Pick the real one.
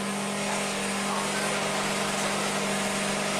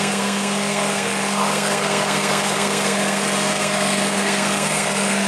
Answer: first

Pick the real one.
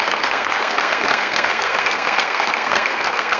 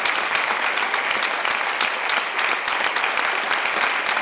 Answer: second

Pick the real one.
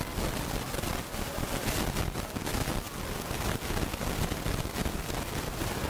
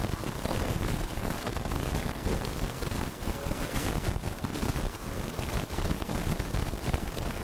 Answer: first